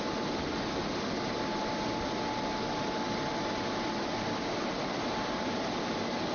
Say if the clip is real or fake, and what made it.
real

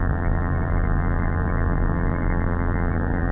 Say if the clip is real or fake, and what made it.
fake, vocoder, BigVGAN v2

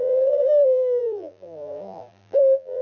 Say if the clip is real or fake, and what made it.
fake, vocoder, BigVGAN v2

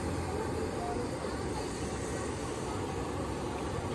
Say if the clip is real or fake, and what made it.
fake, vocoder, BigVGAN v2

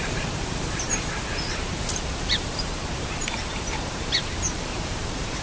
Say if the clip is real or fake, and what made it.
fake, vocoder, BigVGAN v2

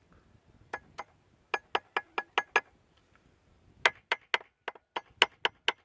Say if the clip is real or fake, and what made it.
real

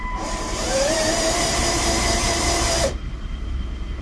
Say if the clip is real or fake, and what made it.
fake, vocoder, BigVGAN v2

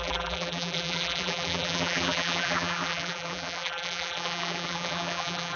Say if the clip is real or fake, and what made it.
fake, vocoder, BigVGAN v2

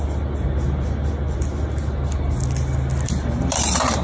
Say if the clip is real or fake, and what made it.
real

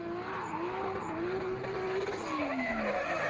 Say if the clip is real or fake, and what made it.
real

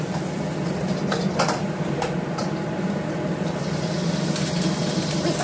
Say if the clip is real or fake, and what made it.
fake, vocoder, BigVGAN v2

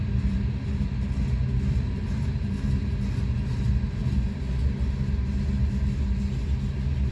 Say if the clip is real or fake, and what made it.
real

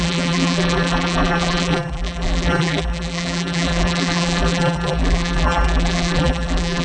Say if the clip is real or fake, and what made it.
fake, vocoder, BigVGAN v2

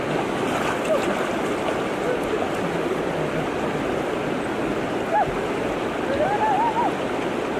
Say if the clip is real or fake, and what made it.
real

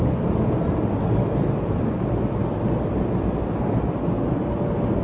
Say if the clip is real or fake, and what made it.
real